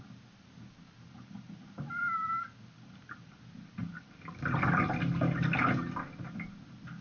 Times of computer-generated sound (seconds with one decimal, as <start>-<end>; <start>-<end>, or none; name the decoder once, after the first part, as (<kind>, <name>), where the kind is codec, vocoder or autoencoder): 2.2-3.3 (vocoder, BigVGAN v2); 3.8-4.9